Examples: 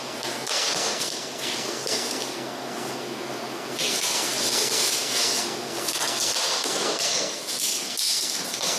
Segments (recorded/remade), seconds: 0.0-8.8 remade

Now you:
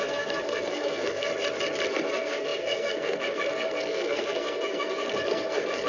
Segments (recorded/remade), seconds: 0.0-1.3 remade; 1.3-1.9 recorded; 1.9-5.9 remade

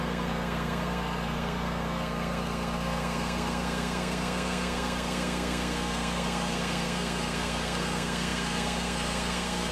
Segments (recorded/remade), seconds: 0.0-9.7 remade